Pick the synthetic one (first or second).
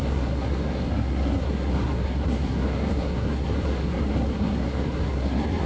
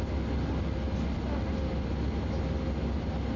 first